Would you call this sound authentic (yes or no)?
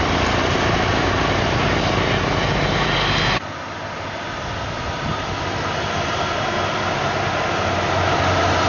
yes